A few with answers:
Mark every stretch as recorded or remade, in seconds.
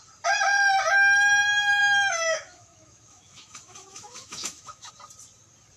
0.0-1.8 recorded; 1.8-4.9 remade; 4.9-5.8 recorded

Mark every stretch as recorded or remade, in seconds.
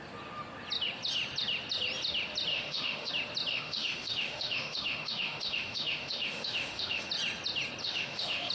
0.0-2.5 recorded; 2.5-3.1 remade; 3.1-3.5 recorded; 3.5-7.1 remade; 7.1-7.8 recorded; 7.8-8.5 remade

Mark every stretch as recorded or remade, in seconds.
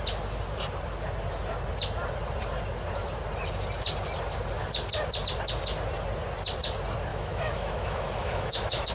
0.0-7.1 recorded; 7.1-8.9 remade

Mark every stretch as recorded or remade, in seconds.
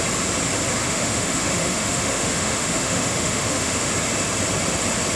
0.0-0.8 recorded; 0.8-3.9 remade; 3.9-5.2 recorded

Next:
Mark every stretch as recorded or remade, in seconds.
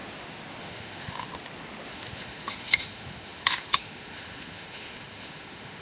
0.0-0.6 recorded; 0.6-1.3 remade; 1.3-1.9 recorded; 1.9-5.8 remade